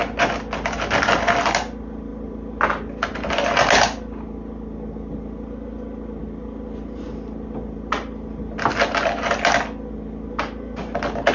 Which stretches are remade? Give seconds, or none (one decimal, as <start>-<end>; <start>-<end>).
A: none